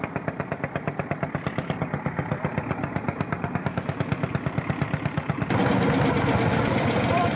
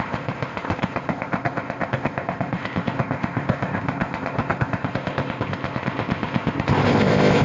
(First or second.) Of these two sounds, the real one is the first